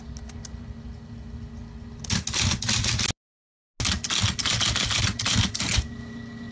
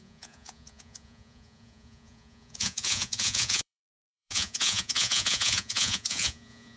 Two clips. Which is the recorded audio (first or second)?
first